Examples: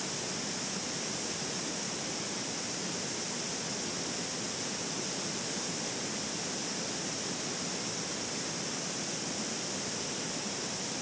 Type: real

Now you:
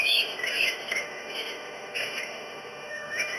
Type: fake